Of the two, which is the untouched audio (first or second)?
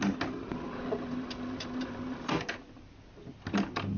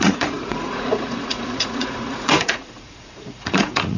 first